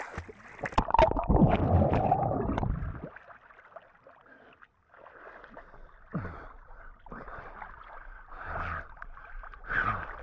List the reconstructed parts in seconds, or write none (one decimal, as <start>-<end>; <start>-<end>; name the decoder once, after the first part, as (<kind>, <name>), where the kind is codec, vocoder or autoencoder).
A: none